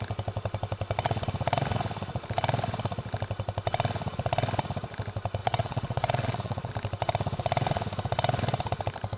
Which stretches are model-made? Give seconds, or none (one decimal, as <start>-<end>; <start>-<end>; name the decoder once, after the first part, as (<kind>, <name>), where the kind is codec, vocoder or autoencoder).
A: 5.4-6.7 (vocoder, WaveNeXt)